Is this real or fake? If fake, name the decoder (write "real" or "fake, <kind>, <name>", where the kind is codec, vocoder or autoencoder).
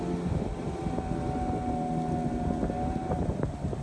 real